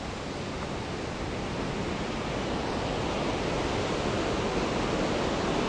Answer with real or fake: real